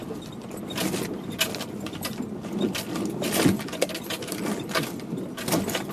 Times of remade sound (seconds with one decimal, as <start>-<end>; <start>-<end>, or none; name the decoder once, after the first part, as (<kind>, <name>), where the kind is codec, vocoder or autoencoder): none